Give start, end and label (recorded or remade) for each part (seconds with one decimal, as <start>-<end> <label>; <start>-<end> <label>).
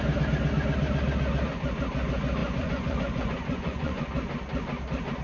0.0-2.4 recorded; 2.4-4.1 remade; 4.1-5.2 recorded